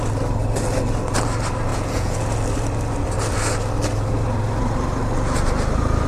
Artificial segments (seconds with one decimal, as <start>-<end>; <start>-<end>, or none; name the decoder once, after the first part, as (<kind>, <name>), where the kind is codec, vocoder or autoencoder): 1.7-2.2 (vocoder, Vocos)